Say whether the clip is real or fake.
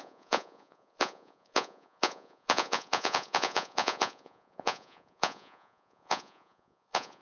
fake